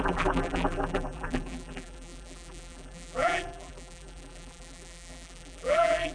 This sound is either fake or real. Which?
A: fake